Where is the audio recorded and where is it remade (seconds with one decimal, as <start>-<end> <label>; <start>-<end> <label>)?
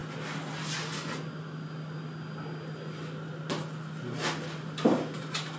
0.0-5.6 recorded